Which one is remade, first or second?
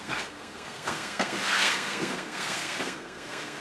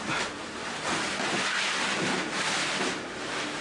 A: first